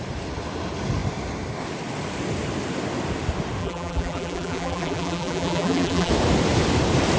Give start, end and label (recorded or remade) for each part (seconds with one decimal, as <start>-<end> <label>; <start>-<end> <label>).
0.0-3.6 recorded; 3.6-6.1 remade; 6.1-7.2 recorded